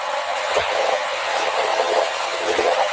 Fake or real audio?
fake